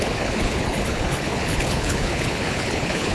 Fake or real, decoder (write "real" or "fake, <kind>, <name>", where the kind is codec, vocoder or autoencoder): fake, codec, HILCodec